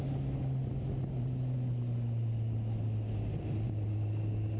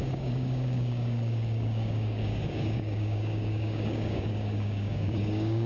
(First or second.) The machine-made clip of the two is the second